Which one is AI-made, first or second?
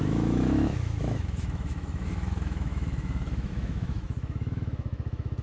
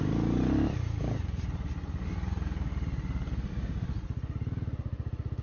first